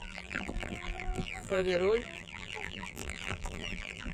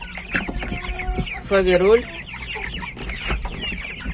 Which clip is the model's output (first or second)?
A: first